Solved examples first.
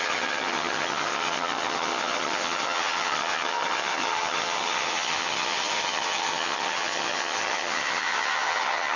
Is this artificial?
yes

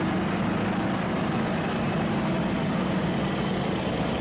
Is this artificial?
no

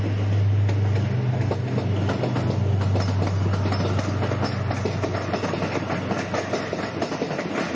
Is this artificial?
no